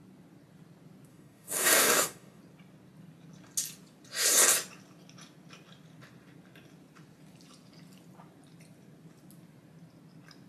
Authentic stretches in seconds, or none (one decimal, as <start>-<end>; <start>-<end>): 0.0-1.1; 2.4-10.5